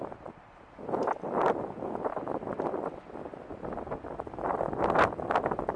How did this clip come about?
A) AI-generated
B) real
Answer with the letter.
B